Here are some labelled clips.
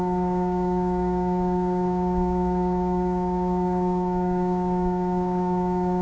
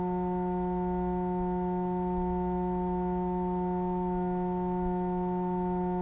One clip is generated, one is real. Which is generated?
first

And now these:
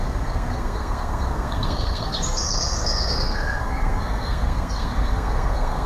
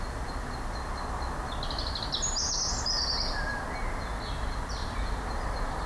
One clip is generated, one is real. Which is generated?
first